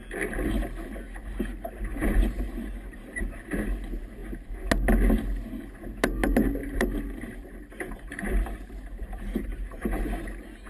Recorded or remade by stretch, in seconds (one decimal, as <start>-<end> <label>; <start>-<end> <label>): 0.0-1.9 recorded; 1.9-3.4 remade; 3.4-6.6 recorded; 6.6-10.0 remade; 10.0-10.7 recorded